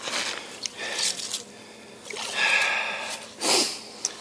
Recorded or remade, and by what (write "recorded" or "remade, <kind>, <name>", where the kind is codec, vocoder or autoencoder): recorded